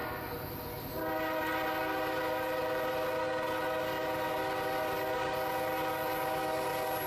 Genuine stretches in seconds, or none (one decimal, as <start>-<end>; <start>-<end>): 0.0-7.1